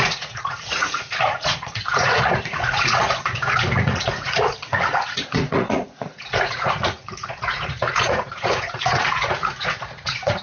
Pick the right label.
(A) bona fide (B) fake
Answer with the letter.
B